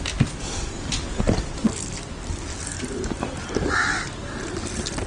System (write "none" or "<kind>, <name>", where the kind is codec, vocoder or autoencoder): none